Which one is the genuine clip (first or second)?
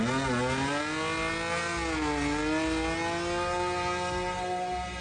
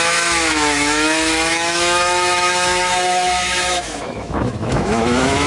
first